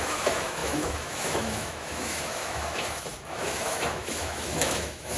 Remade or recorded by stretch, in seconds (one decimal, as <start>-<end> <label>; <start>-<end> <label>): 0.0-5.2 remade